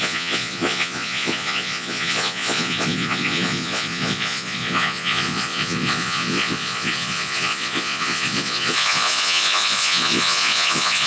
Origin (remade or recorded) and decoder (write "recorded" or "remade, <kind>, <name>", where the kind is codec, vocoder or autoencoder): remade, vocoder, Vocos